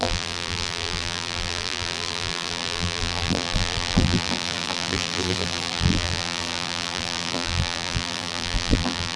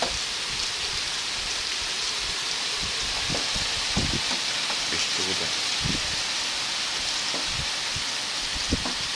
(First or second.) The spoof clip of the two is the first